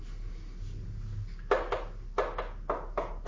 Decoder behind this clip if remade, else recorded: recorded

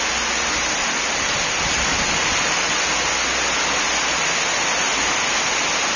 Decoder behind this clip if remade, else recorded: recorded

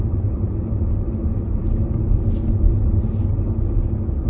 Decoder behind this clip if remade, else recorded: recorded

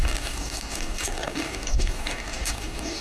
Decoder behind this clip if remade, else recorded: remade, codec, DAC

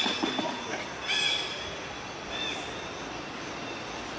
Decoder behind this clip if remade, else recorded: recorded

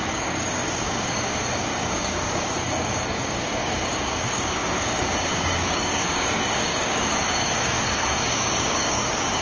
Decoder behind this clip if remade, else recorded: remade, codec, DAC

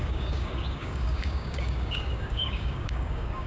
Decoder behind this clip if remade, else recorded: remade, codec, DAC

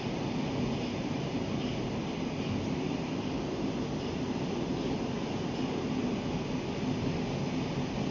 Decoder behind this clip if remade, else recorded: recorded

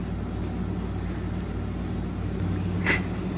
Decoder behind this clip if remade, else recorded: recorded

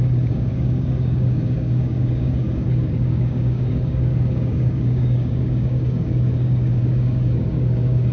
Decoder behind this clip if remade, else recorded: remade, codec, DAC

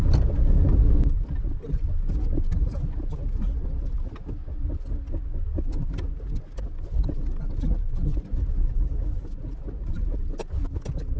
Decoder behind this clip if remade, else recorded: recorded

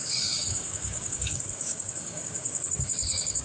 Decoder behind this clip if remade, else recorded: remade, codec, DAC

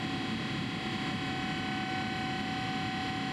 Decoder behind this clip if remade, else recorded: recorded